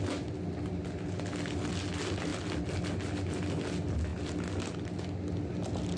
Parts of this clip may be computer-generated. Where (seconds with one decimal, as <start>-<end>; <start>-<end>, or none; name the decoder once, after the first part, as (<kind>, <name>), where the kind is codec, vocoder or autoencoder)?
none